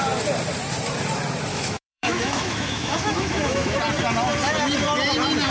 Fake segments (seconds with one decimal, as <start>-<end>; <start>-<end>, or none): 1.5-3.8